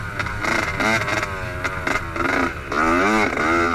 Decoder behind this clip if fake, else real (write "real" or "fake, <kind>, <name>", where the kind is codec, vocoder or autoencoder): real